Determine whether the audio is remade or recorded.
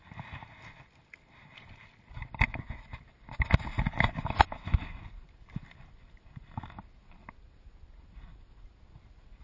recorded